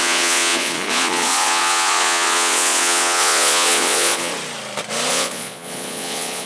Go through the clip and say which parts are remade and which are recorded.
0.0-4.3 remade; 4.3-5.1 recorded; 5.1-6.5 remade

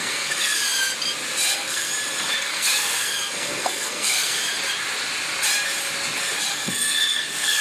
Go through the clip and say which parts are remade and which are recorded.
0.0-0.6 remade; 0.6-1.5 recorded; 1.5-1.9 remade; 1.9-2.4 recorded; 2.4-4.4 remade; 4.4-6.5 recorded; 6.5-7.6 remade